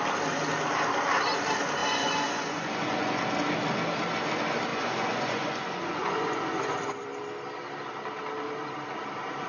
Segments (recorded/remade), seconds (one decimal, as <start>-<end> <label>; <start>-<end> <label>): 0.0-1.8 recorded; 1.8-3.2 remade; 3.2-4.7 recorded; 4.7-6.7 remade; 6.7-9.5 recorded